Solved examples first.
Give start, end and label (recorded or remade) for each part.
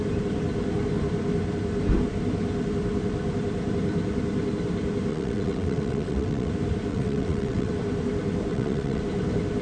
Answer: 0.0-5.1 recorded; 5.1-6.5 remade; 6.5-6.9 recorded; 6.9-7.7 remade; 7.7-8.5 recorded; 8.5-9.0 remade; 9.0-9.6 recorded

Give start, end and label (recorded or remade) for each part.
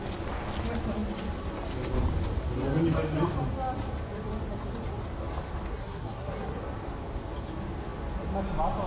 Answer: 0.0-5.7 recorded; 5.7-6.6 remade; 6.6-8.9 recorded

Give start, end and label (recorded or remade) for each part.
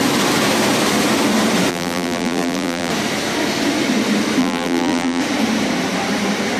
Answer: 0.0-1.7 recorded; 1.7-2.9 remade; 2.9-4.4 recorded; 4.4-5.2 remade; 5.2-6.6 recorded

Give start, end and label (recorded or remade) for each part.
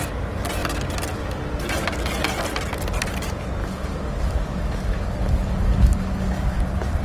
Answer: 0.0-3.6 recorded; 3.6-6.6 remade; 6.6-7.0 recorded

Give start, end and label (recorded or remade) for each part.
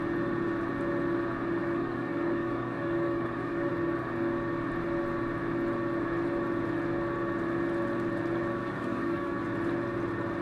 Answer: 0.0-1.6 recorded; 1.6-3.7 remade; 3.7-8.6 recorded; 8.6-9.4 remade; 9.4-10.4 recorded